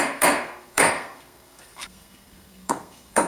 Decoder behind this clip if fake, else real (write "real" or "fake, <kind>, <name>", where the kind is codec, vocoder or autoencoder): fake, codec, SNAC